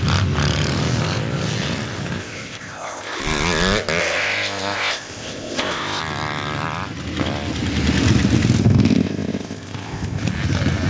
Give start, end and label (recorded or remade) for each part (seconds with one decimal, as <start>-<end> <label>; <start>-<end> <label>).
0.0-2.2 recorded; 2.2-3.2 remade; 3.2-4.0 recorded; 4.0-6.0 remade; 6.0-8.6 recorded; 8.6-10.2 remade; 10.2-10.9 recorded